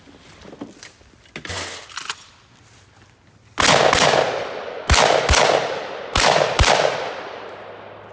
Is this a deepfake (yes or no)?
no